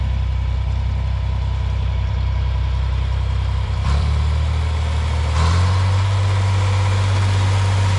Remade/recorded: remade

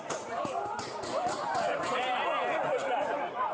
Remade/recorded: remade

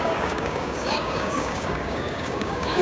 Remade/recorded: remade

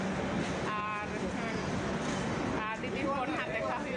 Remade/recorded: recorded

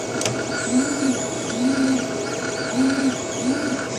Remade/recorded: recorded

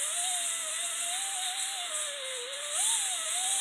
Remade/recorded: recorded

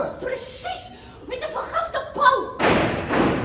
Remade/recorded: recorded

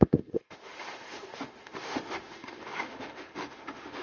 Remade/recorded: remade